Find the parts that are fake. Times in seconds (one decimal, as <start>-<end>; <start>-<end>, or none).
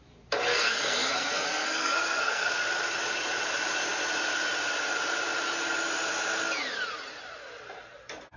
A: 0.5-2.5